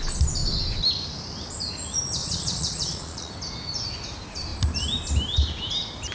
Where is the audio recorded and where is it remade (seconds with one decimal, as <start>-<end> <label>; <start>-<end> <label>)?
0.0-2.2 recorded; 2.2-3.3 remade; 3.3-6.1 recorded